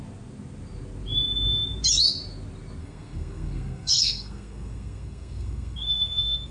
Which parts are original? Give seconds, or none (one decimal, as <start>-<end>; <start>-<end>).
0.0-2.8